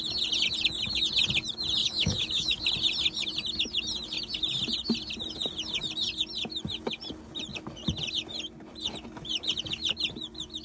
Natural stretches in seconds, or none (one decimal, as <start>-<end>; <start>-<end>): 0.0-1.8; 2.6-10.6